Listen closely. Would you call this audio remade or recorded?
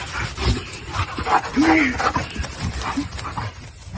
recorded